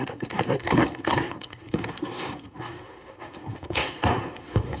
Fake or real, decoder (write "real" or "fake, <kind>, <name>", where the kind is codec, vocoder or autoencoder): fake, codec, SNAC